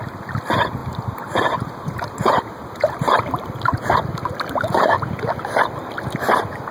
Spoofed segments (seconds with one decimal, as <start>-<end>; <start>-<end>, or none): 0.8-3.1